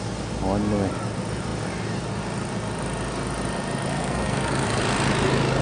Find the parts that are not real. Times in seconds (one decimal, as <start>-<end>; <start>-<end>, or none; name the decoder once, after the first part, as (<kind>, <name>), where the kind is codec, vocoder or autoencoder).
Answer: 3.9-4.8 (codec, SNAC)